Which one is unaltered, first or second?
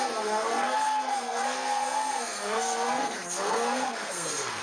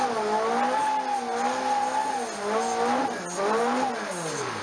second